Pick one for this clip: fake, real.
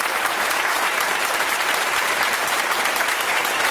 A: fake